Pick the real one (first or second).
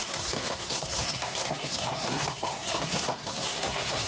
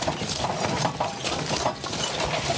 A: second